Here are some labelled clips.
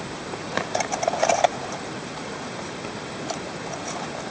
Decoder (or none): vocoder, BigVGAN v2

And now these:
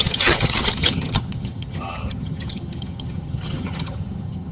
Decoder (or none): vocoder, HiFi-GAN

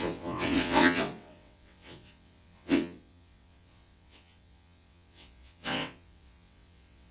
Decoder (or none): vocoder, WaveNeXt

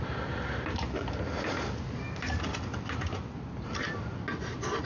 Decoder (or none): none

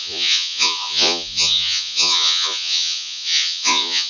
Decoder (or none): vocoder, Vocos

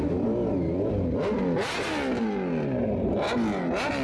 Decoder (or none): none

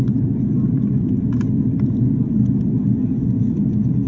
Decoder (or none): none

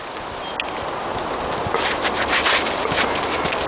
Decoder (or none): none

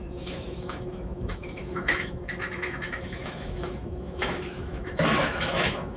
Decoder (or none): autoencoder, DAC-VAE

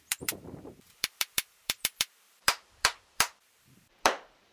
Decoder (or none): vocoder, BigVGAN v2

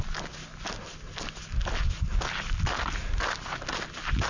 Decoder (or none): none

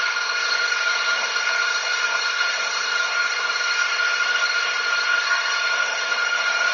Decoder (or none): codec, SNAC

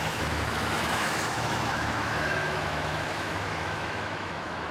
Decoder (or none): autoencoder, DAC-VAE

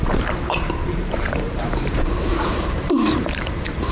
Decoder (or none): vocoder, BigVGAN v2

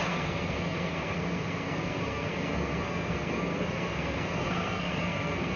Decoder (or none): codec, SNAC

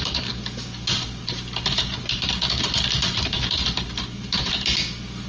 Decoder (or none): none